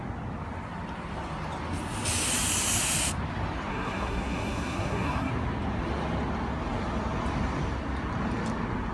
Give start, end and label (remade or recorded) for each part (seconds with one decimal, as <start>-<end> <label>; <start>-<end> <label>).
0.0-3.7 recorded; 3.7-5.3 remade; 5.3-8.9 recorded